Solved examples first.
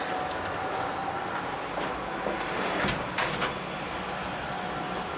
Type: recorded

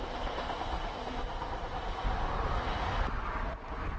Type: recorded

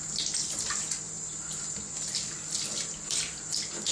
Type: recorded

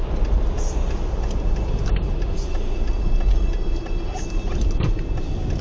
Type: recorded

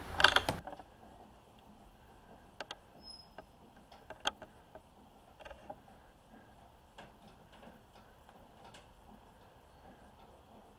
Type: recorded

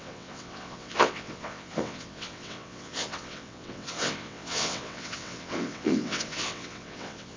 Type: remade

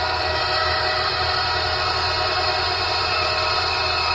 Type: recorded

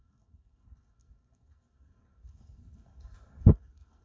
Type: remade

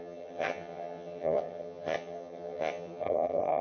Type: remade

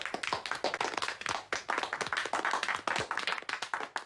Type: recorded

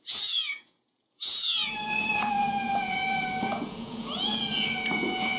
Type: remade